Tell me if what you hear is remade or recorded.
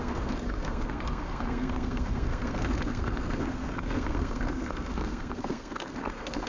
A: remade